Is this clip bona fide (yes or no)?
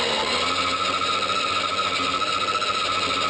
yes